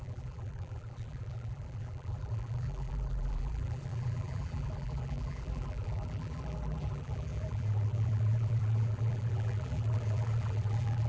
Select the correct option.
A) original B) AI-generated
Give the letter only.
B